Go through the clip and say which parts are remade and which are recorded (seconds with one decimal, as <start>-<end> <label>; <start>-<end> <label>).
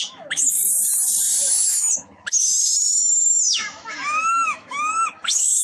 0.0-0.6 remade; 0.6-1.5 recorded; 1.5-2.5 remade; 2.5-3.0 recorded; 3.0-5.6 remade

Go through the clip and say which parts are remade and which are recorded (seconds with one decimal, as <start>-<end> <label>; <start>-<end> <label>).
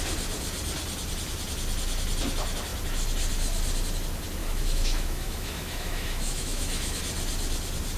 0.0-4.4 recorded; 4.4-7.0 remade; 7.0-8.0 recorded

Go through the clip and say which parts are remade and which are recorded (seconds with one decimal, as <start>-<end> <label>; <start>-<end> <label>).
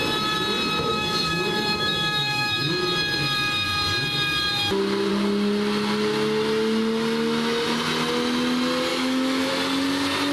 0.0-0.9 recorded; 0.9-2.7 remade; 2.7-8.9 recorded; 8.9-9.5 remade; 9.5-10.3 recorded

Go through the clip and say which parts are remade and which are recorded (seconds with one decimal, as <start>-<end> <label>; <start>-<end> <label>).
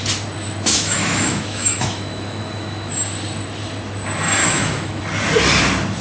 0.0-0.7 recorded; 0.7-2.9 remade; 2.9-4.4 recorded; 4.4-5.0 remade; 5.0-6.0 recorded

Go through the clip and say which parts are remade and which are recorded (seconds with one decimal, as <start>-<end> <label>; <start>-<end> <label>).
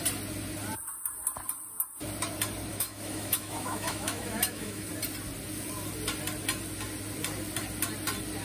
0.0-2.7 recorded; 2.7-4.9 remade; 4.9-8.4 recorded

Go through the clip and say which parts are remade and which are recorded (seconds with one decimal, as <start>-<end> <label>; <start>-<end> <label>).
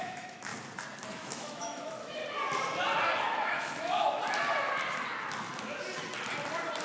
0.0-0.5 remade; 0.5-1.1 recorded; 1.1-2.2 remade; 2.2-3.2 recorded; 3.2-4.2 remade; 4.2-6.8 recorded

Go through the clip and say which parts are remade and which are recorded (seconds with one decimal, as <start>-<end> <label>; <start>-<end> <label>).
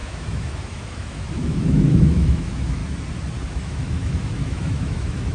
0.0-2.8 remade; 2.8-3.5 recorded; 3.5-5.3 remade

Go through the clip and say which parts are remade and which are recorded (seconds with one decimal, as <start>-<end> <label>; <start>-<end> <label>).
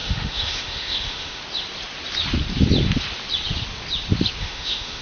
0.0-1.4 remade; 1.4-4.4 recorded; 4.4-5.0 remade